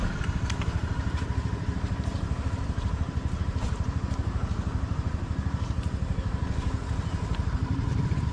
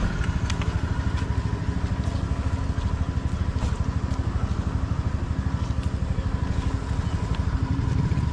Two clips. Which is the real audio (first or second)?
second